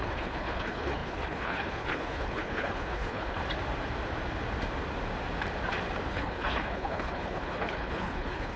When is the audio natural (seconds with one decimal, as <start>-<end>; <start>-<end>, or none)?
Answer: 3.4-6.1